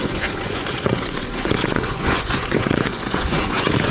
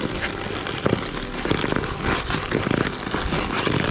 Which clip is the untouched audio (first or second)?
second